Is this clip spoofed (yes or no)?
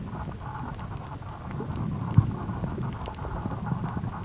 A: no